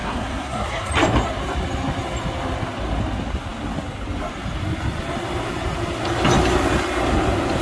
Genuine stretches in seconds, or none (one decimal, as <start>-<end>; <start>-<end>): 0.9-7.6